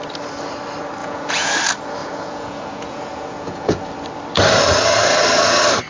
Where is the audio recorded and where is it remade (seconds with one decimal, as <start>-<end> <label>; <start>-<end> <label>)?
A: 0.0-1.0 recorded; 1.0-1.5 remade; 1.5-2.0 recorded; 2.0-3.9 remade; 3.9-5.9 recorded